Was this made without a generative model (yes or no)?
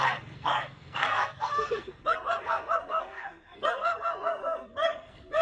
no